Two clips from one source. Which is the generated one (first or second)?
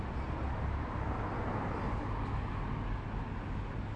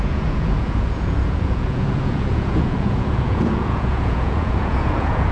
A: second